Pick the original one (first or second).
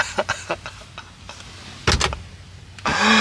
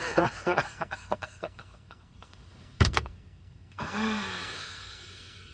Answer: first